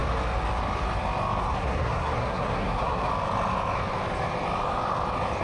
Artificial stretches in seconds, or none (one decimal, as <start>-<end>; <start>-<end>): 1.4-3.1